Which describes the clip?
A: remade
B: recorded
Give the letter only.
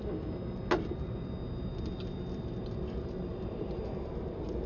B